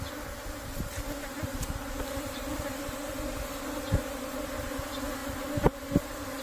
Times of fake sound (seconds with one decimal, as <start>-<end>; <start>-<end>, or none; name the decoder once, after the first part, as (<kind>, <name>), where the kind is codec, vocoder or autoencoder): none